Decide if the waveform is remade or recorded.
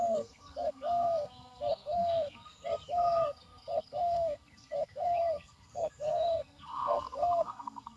remade